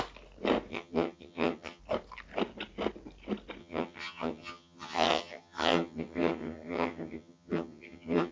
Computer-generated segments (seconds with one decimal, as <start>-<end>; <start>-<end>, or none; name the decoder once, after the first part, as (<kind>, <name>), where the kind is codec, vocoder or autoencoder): 0.7-1.8 (vocoder, HiFi-GAN); 3.6-8.3